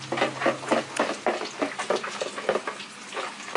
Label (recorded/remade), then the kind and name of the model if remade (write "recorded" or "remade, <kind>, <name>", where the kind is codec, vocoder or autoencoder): recorded